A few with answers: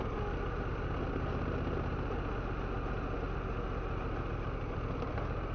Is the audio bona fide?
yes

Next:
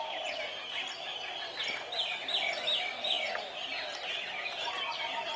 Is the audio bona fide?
yes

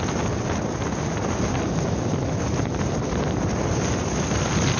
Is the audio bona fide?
yes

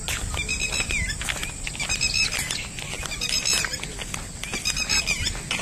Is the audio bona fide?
yes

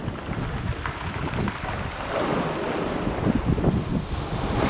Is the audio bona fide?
yes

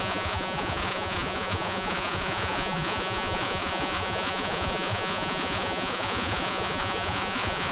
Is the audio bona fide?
no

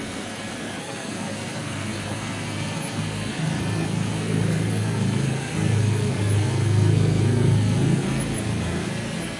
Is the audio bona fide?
no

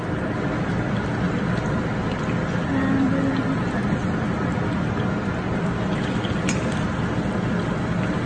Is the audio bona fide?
yes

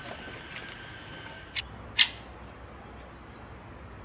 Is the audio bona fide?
yes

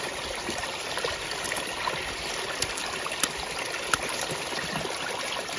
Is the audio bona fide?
yes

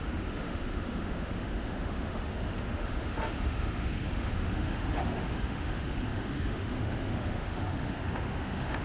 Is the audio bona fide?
no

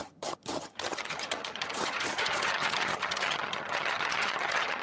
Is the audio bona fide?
no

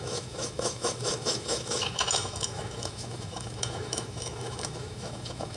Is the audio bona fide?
no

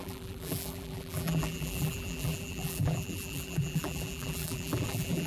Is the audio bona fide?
no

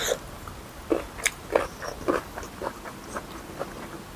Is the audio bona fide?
yes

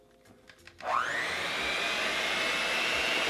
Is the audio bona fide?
yes